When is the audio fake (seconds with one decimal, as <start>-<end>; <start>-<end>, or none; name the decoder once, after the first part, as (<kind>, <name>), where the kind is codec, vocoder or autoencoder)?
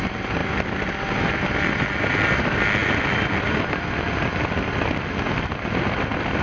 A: none